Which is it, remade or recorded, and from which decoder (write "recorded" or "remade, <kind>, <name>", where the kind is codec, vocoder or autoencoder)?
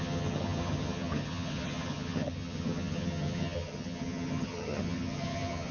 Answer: remade, vocoder, HiFi-GAN